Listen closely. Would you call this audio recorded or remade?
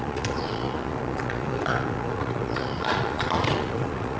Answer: remade